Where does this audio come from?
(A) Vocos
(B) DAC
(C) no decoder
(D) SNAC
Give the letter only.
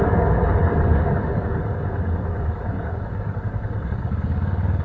B